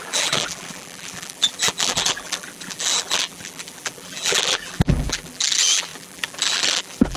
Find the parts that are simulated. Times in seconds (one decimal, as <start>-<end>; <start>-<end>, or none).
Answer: 0.0-7.2

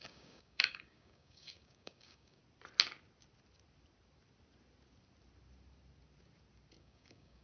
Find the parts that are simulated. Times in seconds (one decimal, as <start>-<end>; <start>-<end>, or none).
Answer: 0.0-2.4; 6.8-7.4

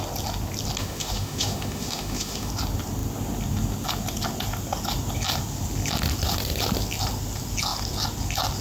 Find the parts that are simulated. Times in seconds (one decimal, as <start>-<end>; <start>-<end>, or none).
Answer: 0.8-2.5

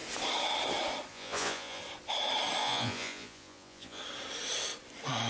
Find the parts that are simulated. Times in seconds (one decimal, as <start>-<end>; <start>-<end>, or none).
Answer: 1.1-1.8; 2.6-4.0